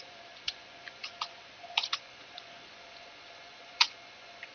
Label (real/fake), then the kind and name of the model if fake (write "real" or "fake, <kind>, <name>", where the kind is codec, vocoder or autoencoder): fake, vocoder, Vocos